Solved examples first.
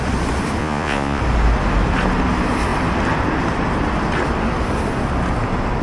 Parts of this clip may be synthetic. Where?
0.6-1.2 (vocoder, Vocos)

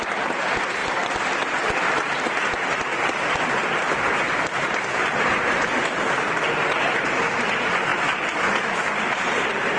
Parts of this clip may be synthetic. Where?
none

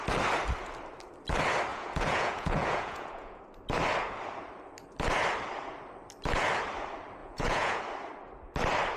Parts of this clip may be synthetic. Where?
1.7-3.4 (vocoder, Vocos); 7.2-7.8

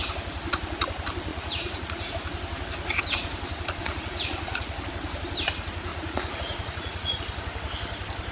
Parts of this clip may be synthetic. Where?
1.3-2.1 (vocoder, Vocos); 3.8-4.8; 5.9-7.2

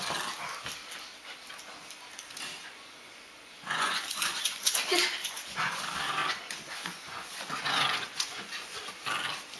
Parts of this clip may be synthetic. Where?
2.6-4.8 (vocoder, Vocos); 5.2-5.8; 6.2-8.9

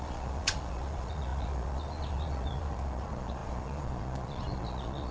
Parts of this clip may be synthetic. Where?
0.0-5.1 (vocoder, Vocos)

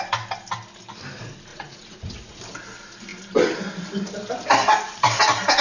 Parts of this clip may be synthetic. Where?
1.5-2.4 (vocoder, Vocos)

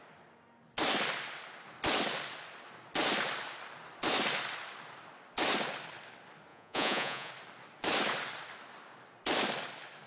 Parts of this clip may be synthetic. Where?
6.5-7.3 (vocoder, Vocos)